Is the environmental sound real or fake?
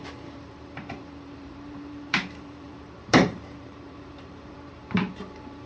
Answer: fake